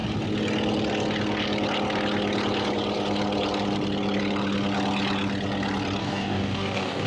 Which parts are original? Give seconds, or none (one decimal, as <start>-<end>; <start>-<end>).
0.0-6.0